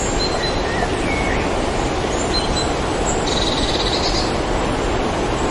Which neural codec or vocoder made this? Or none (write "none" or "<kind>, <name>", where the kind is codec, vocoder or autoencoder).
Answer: none